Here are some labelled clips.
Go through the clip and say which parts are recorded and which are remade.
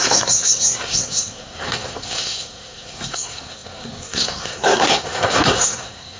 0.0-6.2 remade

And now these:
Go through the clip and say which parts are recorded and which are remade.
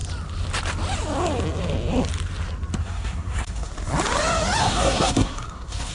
0.0-2.8 recorded; 2.8-3.7 remade; 3.7-4.6 recorded; 4.6-5.9 remade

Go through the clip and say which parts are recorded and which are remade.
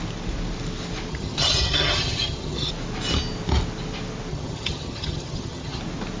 0.0-1.1 recorded; 1.1-2.7 remade; 2.7-4.3 recorded; 4.3-5.8 remade; 5.8-6.2 recorded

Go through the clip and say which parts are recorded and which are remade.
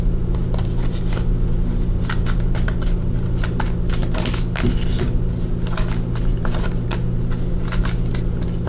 0.0-8.7 recorded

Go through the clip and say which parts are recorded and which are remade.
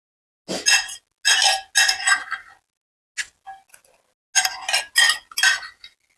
0.0-6.2 recorded